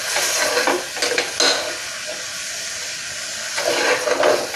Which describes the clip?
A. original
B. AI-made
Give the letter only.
A